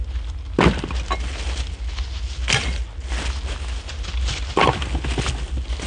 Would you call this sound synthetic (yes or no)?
no